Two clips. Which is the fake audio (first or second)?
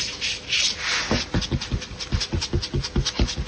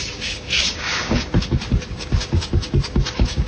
second